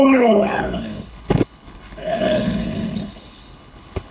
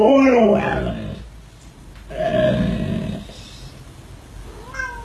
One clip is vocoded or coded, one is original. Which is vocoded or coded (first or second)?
first